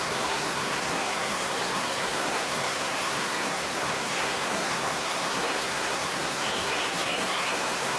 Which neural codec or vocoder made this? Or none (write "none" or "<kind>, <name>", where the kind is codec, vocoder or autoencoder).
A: codec, SNAC